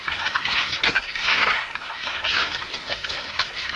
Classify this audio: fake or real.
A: fake